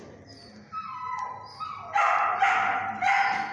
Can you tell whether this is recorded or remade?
recorded